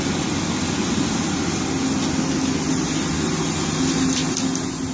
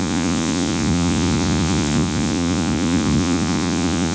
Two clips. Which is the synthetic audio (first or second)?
second